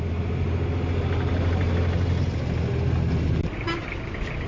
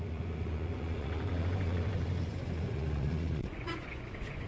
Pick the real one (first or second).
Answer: first